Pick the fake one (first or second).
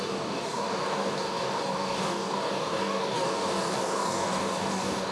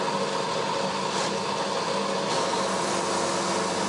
first